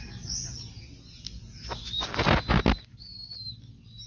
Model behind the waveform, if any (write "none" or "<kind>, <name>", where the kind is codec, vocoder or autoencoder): none